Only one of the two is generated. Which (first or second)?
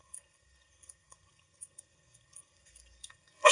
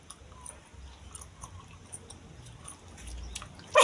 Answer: first